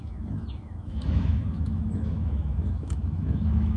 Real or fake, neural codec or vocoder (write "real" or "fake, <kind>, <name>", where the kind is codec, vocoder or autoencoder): fake, autoencoder, DAC-VAE